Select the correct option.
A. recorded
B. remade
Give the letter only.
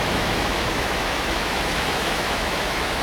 B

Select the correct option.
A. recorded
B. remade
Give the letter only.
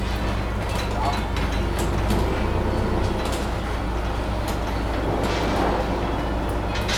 A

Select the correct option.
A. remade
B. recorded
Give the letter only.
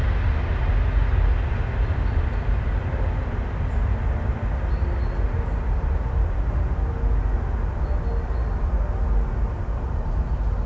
B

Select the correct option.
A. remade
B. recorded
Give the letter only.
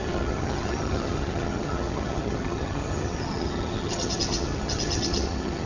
A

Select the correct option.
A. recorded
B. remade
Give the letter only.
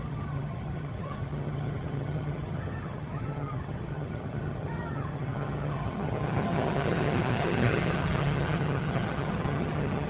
B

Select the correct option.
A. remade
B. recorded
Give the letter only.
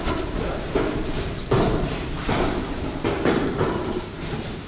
A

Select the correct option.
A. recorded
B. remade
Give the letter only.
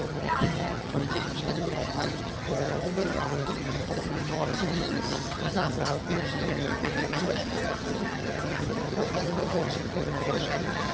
B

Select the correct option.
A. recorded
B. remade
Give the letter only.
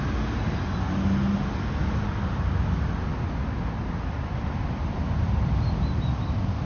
A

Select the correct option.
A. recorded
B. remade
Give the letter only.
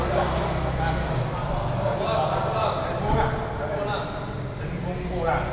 A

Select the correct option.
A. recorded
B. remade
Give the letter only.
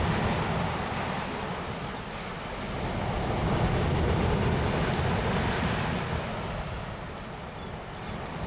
A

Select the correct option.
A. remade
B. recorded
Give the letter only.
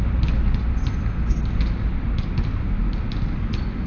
B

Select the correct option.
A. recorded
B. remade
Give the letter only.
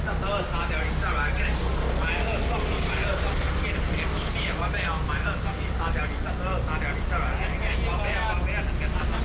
A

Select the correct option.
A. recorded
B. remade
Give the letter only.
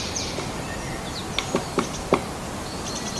B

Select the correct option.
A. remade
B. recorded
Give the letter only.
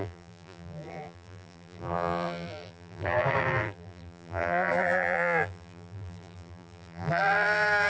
A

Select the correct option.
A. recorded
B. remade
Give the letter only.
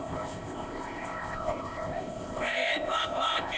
B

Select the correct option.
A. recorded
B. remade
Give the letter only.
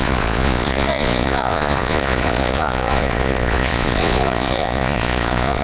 B